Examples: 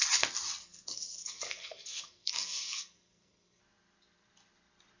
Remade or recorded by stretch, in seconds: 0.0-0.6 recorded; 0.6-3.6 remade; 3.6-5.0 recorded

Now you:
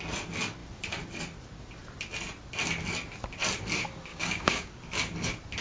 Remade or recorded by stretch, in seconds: 0.0-4.1 recorded; 4.1-4.7 remade; 4.7-5.6 recorded

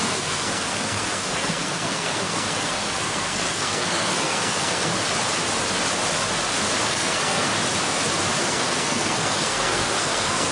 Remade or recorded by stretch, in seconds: 0.0-4.9 remade; 4.9-6.8 recorded; 6.8-7.5 remade; 7.5-8.4 recorded; 8.4-10.5 remade

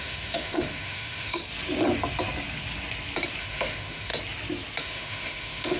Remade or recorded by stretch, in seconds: 0.0-1.4 remade; 1.4-3.4 recorded; 3.4-4.1 remade; 4.1-4.8 recorded; 4.8-5.8 remade

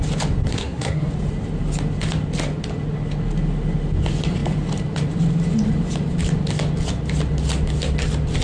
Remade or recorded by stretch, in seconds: 0.0-0.5 recorded; 0.5-1.1 remade; 1.1-8.4 recorded

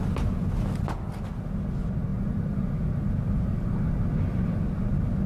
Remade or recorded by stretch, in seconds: 0.0-2.1 recorded; 2.1-3.7 remade; 3.7-5.3 recorded

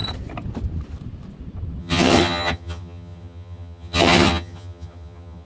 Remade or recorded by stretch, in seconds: 0.0-1.8 recorded; 1.8-5.4 remade